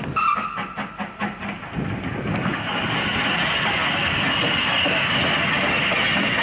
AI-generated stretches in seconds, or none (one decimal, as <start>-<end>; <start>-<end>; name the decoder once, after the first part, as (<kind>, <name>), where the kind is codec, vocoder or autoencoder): none